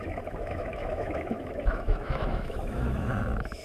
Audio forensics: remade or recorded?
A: remade